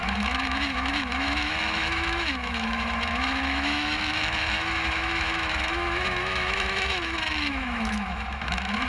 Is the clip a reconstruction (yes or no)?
yes